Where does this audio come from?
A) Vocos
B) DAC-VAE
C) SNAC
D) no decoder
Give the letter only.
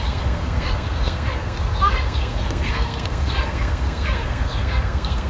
C